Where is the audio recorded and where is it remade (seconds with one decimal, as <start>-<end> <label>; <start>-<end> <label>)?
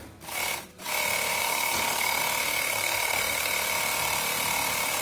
0.0-1.4 recorded; 1.4-2.2 remade; 2.2-2.7 recorded; 2.7-3.5 remade; 3.5-5.0 recorded